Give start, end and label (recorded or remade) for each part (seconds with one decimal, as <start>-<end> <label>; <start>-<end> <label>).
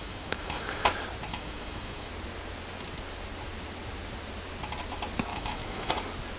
0.0-0.9 remade; 0.9-1.3 recorded; 1.3-2.1 remade; 2.1-5.3 recorded; 5.3-5.9 remade; 5.9-6.4 recorded